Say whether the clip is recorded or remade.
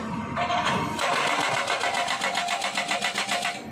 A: recorded